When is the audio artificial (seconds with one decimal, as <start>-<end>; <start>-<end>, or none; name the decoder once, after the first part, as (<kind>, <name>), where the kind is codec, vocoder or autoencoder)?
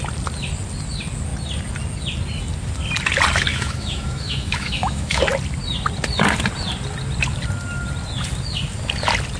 3.5-5.2 (autoencoder, DAC-VAE)